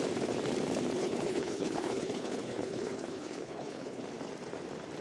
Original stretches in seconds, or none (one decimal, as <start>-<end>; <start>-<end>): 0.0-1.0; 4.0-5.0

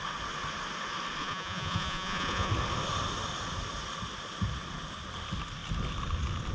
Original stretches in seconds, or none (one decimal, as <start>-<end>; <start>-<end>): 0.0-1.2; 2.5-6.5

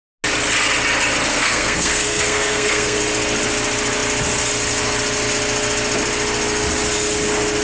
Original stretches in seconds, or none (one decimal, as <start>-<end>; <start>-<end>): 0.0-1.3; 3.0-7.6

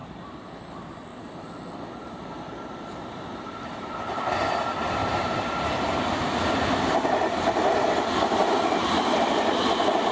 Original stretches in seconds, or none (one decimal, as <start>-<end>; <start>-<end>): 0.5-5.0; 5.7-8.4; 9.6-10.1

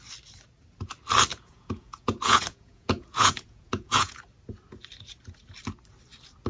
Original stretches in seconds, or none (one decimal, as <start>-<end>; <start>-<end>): 0.0-1.3; 4.2-6.5